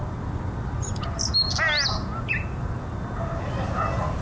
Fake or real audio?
real